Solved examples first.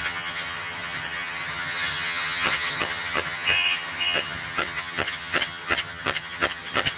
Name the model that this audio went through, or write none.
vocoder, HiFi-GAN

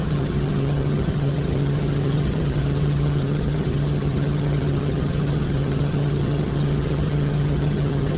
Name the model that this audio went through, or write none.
vocoder, HiFi-GAN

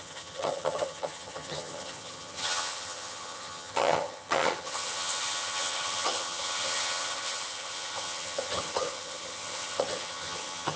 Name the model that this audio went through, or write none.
vocoder, HiFi-GAN